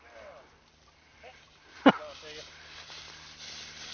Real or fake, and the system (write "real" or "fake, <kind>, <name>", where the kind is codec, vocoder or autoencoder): fake, vocoder, BigVGAN v2